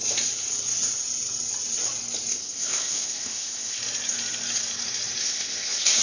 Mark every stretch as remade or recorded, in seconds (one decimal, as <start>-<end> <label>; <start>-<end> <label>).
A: 0.0-2.3 recorded; 2.3-3.8 remade; 3.8-5.2 recorded; 5.2-6.0 remade